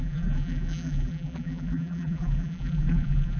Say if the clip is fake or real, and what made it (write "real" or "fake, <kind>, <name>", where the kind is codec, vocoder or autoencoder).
fake, vocoder, BigVGAN v2